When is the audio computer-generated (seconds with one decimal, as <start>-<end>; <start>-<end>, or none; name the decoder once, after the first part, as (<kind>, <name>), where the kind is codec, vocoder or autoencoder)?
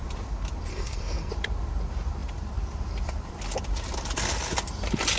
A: 0.7-1.3 (codec, SNAC)